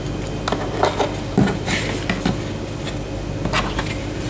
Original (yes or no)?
yes